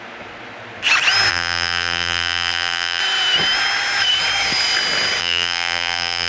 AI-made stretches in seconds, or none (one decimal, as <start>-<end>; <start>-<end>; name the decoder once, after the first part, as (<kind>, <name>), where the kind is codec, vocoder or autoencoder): 1.3-3.0 (vocoder, BigVGAN v2); 5.2-6.3